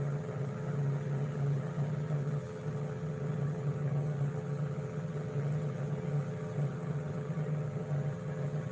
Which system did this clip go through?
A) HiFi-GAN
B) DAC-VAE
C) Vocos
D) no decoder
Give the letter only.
A